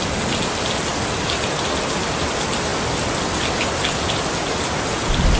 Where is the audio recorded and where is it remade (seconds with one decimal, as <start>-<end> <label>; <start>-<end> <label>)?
0.0-5.4 recorded